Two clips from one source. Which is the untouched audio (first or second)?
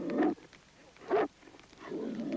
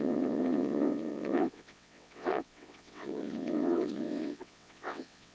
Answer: first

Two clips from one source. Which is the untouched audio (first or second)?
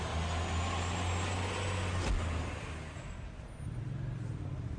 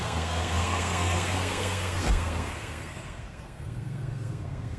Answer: first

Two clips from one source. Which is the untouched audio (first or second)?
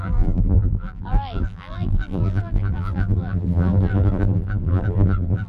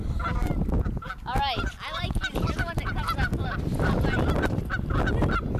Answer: second